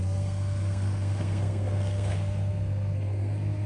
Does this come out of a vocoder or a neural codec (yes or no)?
yes